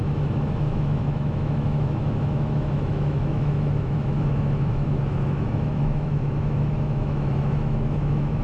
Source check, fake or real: fake